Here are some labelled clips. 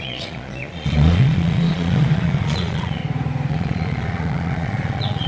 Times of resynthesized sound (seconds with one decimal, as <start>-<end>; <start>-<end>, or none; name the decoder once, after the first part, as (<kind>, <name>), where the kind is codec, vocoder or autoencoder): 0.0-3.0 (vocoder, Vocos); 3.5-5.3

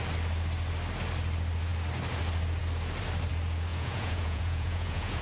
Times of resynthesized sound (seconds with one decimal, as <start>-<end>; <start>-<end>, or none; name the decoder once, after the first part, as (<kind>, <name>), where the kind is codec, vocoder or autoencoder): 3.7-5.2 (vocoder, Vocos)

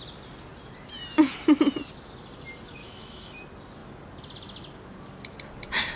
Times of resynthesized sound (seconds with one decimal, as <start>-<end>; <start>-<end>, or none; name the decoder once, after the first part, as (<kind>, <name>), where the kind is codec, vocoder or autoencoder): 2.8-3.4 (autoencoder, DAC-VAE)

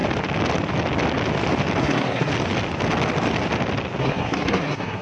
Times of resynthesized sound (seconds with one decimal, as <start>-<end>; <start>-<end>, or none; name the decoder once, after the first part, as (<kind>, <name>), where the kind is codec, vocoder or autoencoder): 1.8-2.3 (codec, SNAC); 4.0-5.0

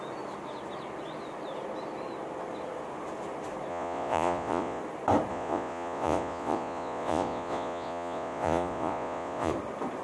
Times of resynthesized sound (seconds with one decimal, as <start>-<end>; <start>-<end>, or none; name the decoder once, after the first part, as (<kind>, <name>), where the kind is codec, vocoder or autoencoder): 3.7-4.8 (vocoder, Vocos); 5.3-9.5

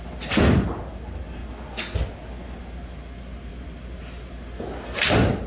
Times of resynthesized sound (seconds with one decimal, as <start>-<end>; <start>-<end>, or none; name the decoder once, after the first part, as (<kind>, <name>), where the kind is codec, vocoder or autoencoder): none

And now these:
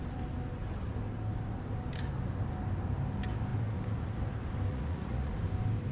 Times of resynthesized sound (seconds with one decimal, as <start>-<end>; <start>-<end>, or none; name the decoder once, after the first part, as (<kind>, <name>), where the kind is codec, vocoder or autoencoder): 4.7-5.3 (vocoder, Vocos)